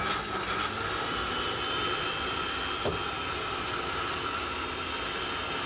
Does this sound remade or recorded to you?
recorded